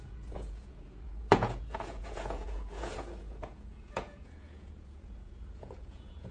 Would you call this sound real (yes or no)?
no